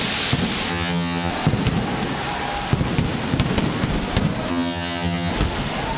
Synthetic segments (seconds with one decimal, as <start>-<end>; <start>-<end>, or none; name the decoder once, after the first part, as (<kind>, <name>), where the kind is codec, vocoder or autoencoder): 0.7-1.3 (vocoder, HiFi-GAN); 4.5-5.3